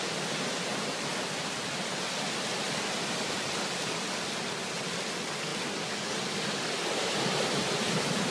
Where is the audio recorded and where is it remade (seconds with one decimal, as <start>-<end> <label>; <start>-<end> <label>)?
0.0-8.3 recorded